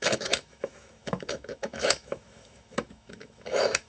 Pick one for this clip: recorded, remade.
remade